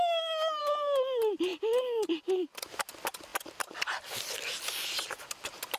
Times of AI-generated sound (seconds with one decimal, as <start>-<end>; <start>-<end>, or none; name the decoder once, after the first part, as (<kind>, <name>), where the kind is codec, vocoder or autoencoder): 0.0-0.6 (autoencoder, DAC-VAE)